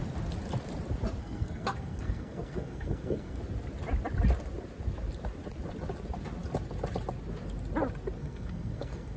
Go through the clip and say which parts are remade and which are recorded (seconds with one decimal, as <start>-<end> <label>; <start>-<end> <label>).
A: 0.0-1.2 recorded; 1.2-3.4 remade; 3.4-8.2 recorded; 8.2-9.2 remade